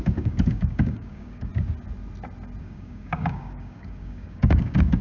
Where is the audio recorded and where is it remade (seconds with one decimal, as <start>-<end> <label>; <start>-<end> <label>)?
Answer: 0.0-1.5 remade; 1.5-2.6 recorded; 2.6-5.0 remade